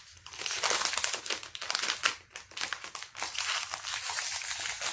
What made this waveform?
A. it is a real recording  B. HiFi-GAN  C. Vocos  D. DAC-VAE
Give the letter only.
A